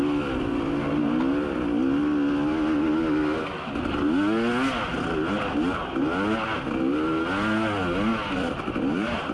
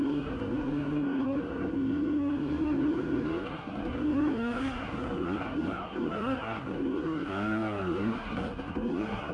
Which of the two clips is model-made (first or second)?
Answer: second